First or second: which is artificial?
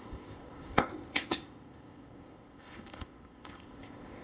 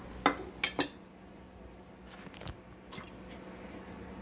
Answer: first